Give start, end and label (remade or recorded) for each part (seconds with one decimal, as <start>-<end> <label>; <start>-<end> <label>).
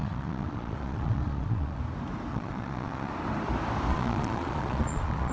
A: 0.0-1.8 remade; 1.8-2.3 recorded; 2.3-3.1 remade; 3.1-3.9 recorded; 3.9-5.3 remade